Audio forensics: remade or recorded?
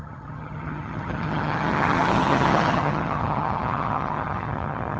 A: remade